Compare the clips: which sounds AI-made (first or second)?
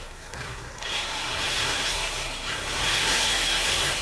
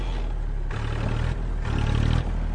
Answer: first